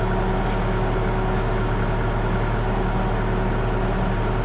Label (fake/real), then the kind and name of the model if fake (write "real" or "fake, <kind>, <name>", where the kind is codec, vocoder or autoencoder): real